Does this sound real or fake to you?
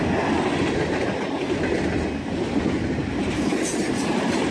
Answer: real